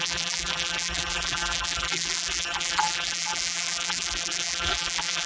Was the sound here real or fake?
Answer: fake